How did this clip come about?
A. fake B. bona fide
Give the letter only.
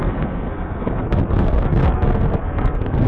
A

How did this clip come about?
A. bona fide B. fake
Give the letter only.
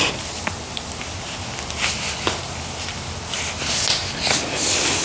A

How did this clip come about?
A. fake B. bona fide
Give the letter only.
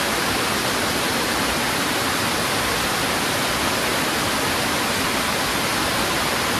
B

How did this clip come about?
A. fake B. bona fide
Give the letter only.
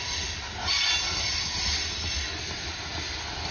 B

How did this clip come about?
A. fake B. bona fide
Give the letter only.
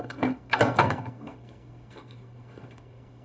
A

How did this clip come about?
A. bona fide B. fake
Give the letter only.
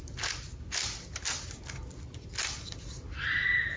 A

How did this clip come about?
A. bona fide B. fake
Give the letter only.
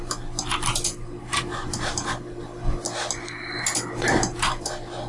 A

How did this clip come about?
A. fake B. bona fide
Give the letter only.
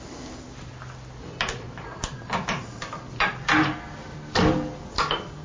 B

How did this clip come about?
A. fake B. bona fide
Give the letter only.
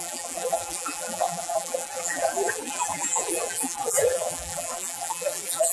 A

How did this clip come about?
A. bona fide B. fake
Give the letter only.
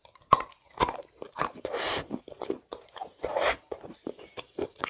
B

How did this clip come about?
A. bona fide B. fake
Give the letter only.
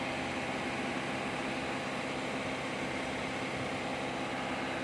A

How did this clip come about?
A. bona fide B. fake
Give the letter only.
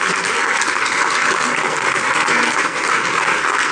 B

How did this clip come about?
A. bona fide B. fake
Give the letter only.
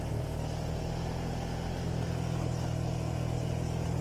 A